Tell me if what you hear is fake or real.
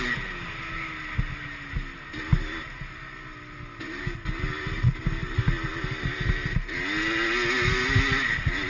real